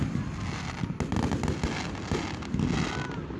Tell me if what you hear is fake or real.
real